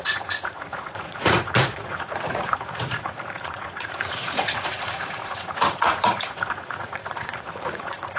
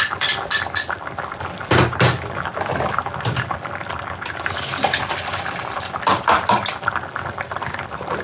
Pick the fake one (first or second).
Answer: first